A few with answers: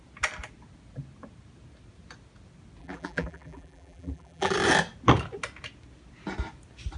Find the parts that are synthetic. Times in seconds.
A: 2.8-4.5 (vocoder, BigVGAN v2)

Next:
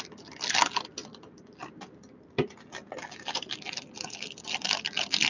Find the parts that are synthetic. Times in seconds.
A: none

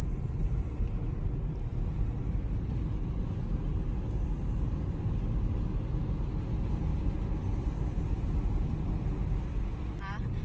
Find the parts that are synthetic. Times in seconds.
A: none